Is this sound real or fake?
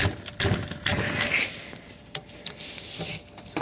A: real